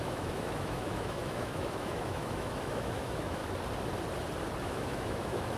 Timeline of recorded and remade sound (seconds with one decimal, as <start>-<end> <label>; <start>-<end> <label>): 0.0-3.4 remade; 3.4-4.6 recorded; 4.6-5.6 remade